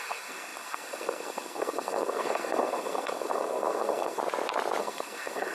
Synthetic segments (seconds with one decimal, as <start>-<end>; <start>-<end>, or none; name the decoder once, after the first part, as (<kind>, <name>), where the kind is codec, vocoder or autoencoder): 0.0-4.2 (codec, SNAC); 4.8-5.5